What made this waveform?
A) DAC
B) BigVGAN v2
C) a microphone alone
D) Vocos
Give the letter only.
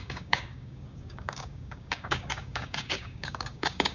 A